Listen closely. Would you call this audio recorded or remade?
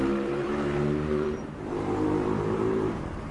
remade